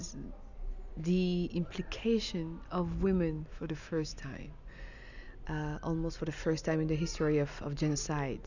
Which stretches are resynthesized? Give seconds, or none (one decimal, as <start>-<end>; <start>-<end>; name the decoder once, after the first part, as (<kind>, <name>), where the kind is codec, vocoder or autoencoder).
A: 3.5-4.1 (autoencoder, DAC-VAE)